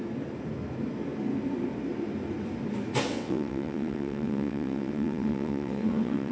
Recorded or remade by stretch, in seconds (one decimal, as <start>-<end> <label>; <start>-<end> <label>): 0.0-3.1 recorded; 3.1-6.3 remade